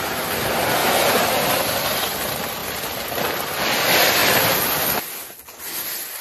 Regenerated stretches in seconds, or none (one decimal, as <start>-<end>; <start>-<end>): none